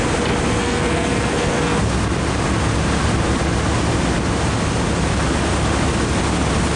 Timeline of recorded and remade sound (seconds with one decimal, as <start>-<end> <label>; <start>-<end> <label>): 0.0-0.6 recorded; 0.6-1.8 remade; 1.8-6.8 recorded